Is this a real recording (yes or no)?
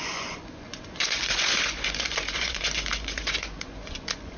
no